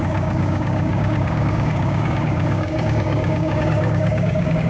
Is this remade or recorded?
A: remade